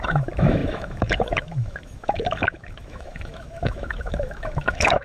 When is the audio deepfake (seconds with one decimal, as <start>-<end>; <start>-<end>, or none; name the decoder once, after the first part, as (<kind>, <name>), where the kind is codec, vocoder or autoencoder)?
0.0-5.0 (autoencoder, DAC-VAE)